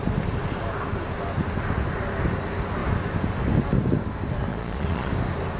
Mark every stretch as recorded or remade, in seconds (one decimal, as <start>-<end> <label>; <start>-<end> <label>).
0.0-4.5 recorded; 4.5-5.1 remade; 5.1-5.6 recorded